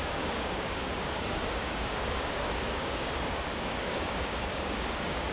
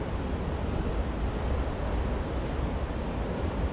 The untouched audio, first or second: second